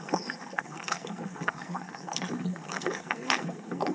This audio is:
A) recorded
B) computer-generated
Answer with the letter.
B